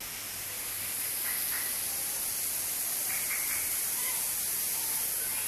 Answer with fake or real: real